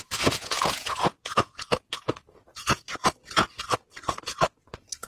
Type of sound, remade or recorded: remade